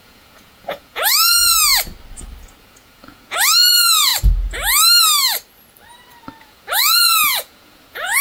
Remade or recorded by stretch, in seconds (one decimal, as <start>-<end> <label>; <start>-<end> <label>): 0.0-1.7 remade; 1.7-2.6 recorded; 2.6-4.1 remade; 4.1-6.4 recorded; 6.4-8.2 remade